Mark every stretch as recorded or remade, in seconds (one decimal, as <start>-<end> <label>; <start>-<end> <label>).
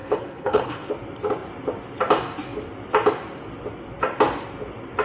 0.0-0.9 remade; 0.9-5.0 recorded